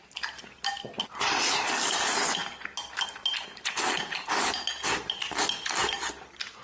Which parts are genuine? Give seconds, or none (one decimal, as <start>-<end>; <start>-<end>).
0.0-5.8